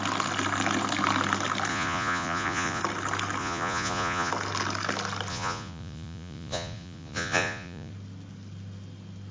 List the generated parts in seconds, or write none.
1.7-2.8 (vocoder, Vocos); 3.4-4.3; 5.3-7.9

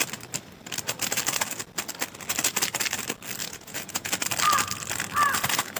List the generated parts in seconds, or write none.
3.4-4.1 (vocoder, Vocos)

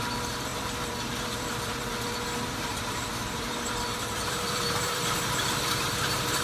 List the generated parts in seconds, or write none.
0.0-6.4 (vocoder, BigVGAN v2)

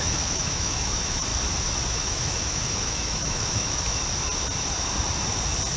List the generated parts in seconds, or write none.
0.0-1.3 (autoencoder, DAC-VAE); 1.9-3.9